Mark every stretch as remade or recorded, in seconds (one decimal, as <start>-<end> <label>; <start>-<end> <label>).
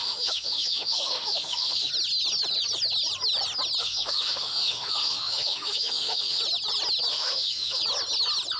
0.0-1.9 remade; 1.9-3.8 recorded; 3.8-6.4 remade; 6.4-7.1 recorded; 7.1-7.8 remade; 7.8-8.6 recorded